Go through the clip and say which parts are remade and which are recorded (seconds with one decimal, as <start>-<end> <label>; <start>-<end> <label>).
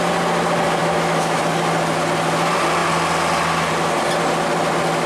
0.0-0.8 recorded; 0.8-1.4 remade; 1.4-5.1 recorded